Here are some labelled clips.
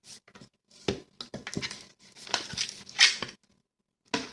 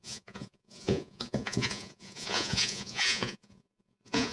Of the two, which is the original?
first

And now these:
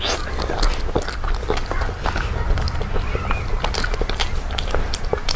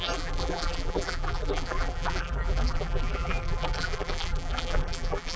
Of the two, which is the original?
first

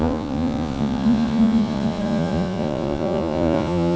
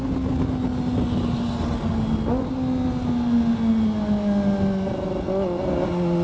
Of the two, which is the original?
second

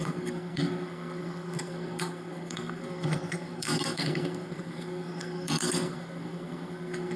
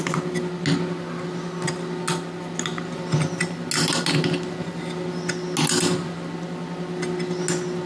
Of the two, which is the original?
second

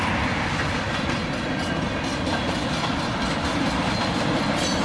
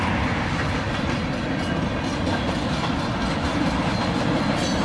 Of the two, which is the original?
second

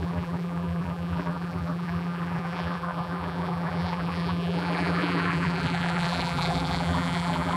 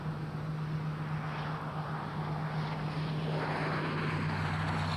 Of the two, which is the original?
second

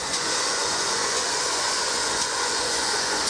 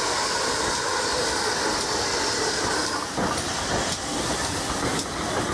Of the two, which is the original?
second